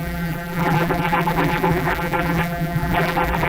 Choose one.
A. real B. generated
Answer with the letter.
B